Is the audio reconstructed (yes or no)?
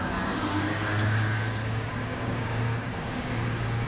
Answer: yes